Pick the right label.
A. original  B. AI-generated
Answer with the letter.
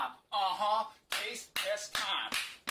A